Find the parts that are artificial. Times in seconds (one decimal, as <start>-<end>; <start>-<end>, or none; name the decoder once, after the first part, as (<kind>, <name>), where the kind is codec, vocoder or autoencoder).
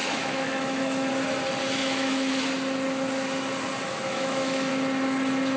0.0-1.1 (autoencoder, DAC-VAE); 1.8-2.4; 3.9-4.7